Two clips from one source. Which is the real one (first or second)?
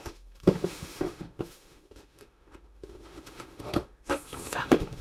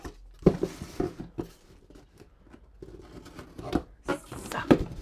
second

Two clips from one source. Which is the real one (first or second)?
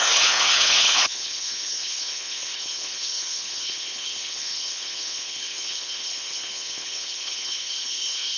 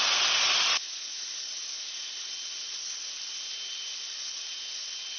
second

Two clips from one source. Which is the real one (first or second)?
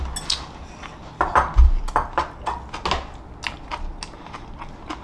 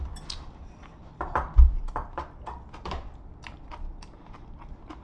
first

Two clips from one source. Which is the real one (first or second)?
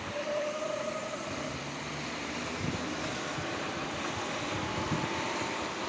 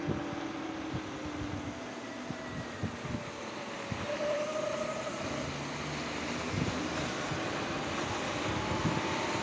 second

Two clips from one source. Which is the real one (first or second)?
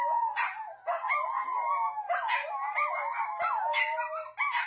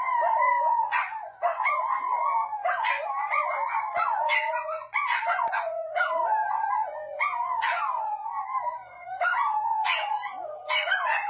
first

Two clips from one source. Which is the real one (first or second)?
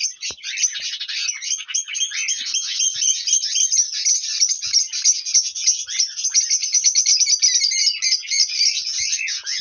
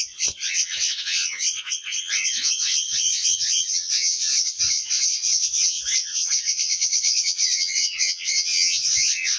first